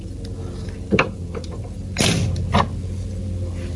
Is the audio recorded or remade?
recorded